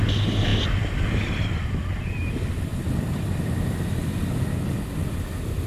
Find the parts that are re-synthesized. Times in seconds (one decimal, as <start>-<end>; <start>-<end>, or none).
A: none